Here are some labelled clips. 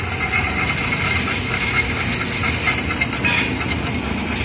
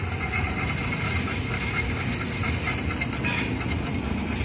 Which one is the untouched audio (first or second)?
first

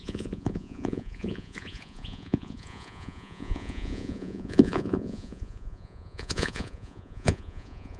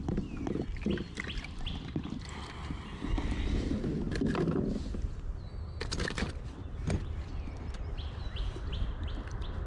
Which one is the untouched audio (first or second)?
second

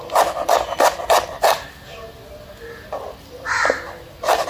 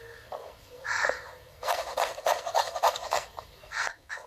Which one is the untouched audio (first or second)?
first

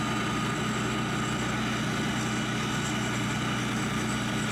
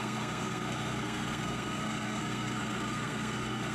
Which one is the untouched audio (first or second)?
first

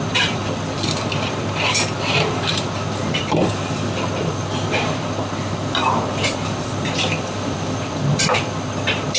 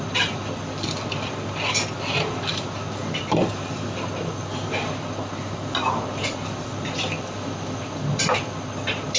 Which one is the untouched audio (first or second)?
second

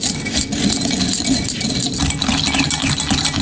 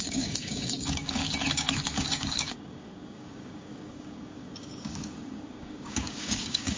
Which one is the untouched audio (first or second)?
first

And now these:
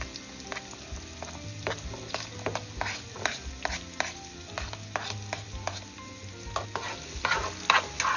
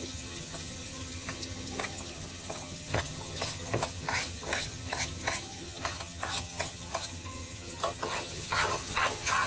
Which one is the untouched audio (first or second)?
first